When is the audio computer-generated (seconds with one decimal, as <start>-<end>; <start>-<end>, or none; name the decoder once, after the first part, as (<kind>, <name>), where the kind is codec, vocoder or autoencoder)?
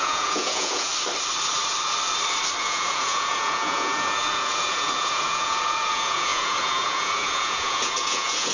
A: 0.0-0.9 (vocoder, Vocos); 2.6-8.5